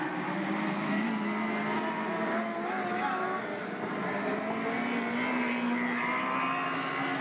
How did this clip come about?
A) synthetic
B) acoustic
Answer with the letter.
B